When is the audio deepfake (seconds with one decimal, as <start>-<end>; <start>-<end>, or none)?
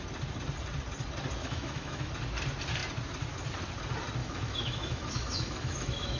1.4-2.1; 4.2-6.2